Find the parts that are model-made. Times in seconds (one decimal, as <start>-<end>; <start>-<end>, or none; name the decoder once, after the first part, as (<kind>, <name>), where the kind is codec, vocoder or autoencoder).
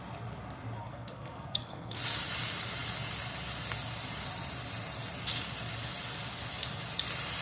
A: 0.8-2.0 (codec, SNAC)